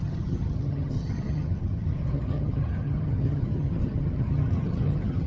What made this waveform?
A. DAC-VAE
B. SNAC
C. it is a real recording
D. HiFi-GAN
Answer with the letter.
D